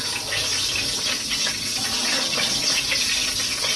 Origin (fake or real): real